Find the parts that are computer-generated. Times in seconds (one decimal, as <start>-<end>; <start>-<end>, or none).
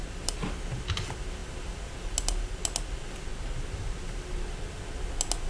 none